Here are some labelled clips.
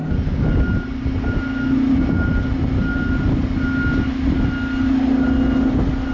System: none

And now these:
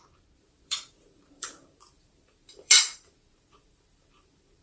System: vocoder, BigVGAN v2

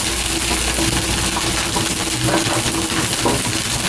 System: none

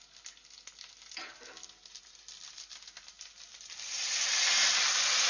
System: vocoder, BigVGAN v2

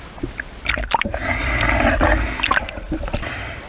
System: vocoder, BigVGAN v2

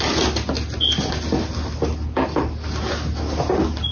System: none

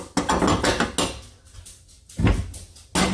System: none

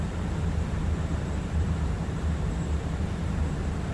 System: vocoder, BigVGAN v2